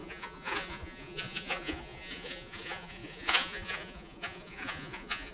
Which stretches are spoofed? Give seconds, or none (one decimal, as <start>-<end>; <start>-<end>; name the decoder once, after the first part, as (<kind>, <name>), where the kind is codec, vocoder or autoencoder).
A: 0.0-5.3 (vocoder, Vocos)